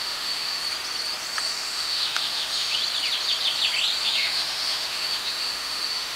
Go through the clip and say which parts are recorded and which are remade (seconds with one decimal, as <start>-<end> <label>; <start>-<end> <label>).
0.0-0.6 remade; 0.6-1.4 recorded; 1.4-2.8 remade; 2.8-4.0 recorded; 4.0-6.2 remade